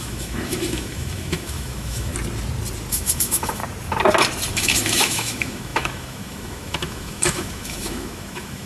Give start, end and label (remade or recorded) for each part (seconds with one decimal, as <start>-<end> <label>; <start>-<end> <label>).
0.0-2.1 remade; 2.1-2.9 recorded; 2.9-3.6 remade; 3.6-4.5 recorded; 4.5-8.7 remade